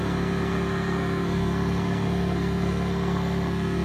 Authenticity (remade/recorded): remade